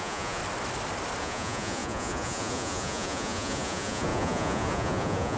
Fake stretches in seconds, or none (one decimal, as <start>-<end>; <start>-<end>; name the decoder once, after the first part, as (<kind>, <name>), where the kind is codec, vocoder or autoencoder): 0.0-0.4 (vocoder, Vocos); 1.2-5.4